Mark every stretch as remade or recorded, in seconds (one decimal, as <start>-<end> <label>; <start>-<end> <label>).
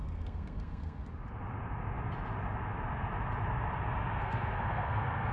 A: 0.0-1.0 remade; 1.0-4.2 recorded; 4.2-5.3 remade